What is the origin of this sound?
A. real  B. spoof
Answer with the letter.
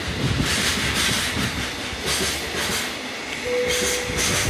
A